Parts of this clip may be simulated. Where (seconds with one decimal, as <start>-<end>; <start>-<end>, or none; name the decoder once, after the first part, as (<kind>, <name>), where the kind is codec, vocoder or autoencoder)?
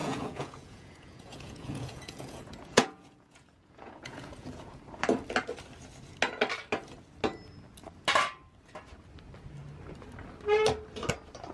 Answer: 0.0-4.8 (vocoder, Vocos)